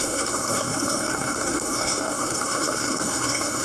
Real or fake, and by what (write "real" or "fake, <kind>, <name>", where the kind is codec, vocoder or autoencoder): fake, codec, SNAC